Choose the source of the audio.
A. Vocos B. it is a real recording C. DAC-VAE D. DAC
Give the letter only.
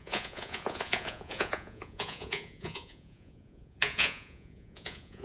A